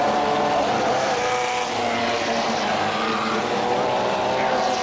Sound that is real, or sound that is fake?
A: real